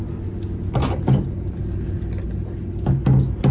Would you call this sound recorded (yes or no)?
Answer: yes